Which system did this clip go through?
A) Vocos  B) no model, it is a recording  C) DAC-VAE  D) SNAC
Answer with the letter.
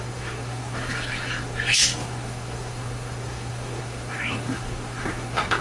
D